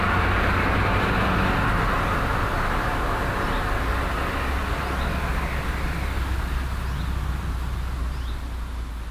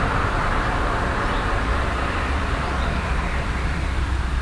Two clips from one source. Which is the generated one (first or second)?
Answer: second